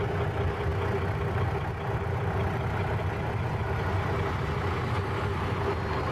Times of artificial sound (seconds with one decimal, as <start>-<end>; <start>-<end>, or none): none